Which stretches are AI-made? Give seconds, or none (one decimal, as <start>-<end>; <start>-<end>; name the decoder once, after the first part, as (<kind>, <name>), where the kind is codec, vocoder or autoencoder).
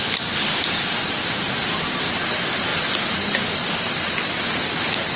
none